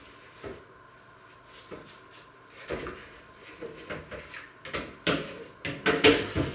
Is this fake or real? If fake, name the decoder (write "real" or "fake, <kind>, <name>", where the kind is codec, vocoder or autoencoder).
real